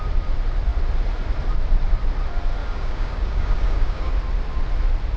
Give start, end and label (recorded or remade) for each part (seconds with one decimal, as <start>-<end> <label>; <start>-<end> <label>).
0.0-2.6 recorded; 2.6-4.1 remade; 4.1-5.2 recorded